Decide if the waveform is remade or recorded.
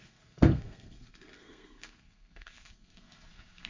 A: remade